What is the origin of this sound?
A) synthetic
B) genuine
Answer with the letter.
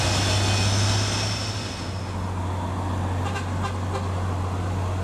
B